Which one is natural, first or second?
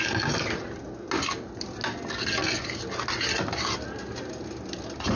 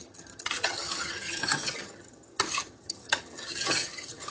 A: first